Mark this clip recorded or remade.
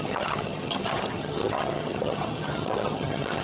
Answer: remade